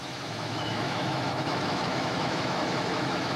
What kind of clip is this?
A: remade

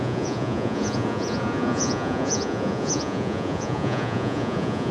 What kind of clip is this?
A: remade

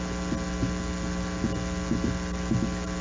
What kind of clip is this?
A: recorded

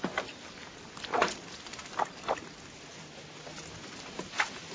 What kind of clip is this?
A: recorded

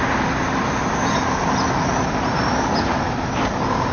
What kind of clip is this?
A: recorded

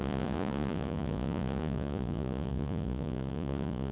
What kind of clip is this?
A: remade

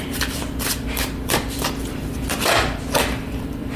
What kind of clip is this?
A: remade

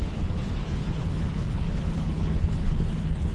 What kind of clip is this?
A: remade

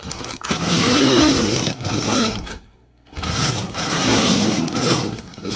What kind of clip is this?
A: remade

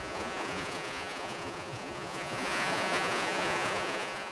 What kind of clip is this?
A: remade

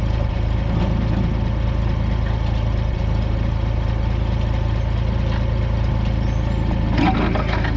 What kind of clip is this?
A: recorded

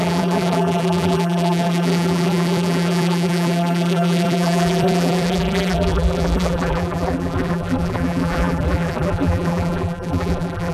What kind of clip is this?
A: remade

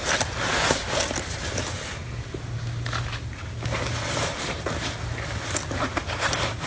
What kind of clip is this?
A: recorded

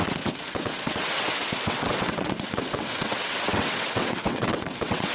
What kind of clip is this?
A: remade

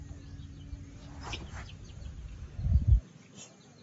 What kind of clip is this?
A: recorded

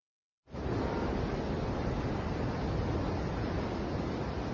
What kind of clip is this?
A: recorded